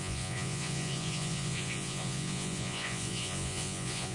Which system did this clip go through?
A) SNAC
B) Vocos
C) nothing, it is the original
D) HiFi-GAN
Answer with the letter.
B